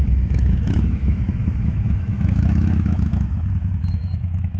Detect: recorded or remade remade